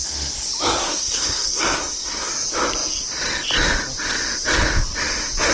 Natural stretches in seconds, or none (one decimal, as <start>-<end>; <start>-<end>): 0.0-0.8; 2.3-5.5